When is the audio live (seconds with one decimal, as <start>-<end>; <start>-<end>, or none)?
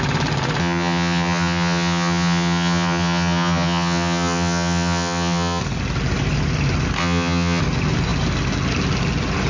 0.0-0.6; 5.6-7.0; 7.6-9.5